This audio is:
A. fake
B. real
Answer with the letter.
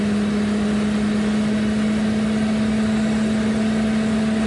B